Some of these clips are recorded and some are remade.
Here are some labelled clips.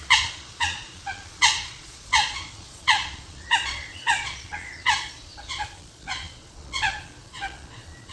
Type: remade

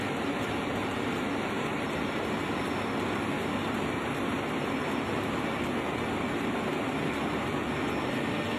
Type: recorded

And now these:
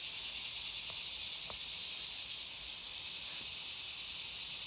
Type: recorded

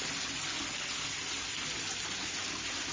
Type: recorded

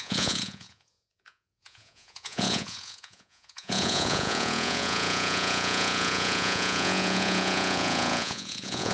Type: remade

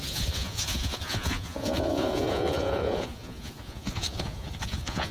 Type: remade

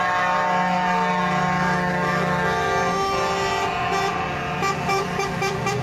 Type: recorded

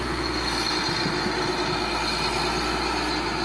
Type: recorded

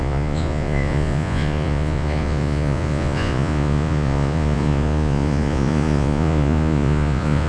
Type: remade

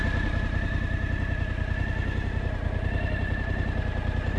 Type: recorded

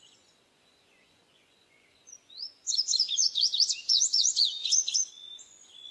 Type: remade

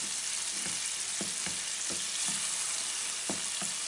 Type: recorded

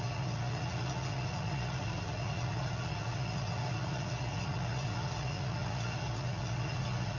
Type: remade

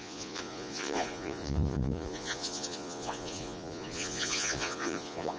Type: remade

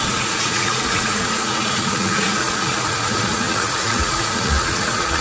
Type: remade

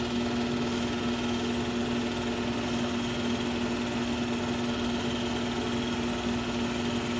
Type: recorded